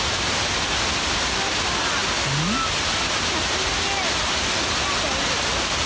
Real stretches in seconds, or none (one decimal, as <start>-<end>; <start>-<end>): 0.0-5.9